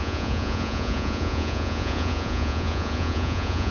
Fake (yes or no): yes